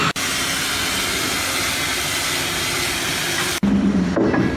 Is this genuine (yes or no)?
yes